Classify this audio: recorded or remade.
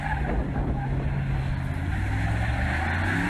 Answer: recorded